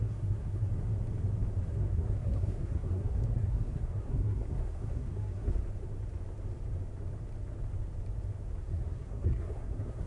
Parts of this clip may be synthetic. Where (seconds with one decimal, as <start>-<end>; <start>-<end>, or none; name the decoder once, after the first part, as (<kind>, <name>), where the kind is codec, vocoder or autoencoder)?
0.0-0.7 (codec, SNAC); 1.7-5.6; 8.6-10.1